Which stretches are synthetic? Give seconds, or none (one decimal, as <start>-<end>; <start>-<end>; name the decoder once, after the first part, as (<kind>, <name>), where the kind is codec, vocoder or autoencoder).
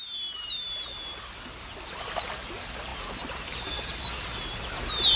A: none